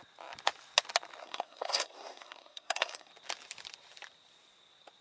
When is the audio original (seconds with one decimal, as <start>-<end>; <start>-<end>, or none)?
0.0-1.2; 3.1-5.0